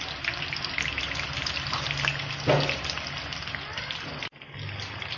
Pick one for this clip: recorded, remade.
recorded